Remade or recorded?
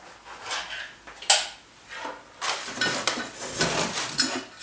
recorded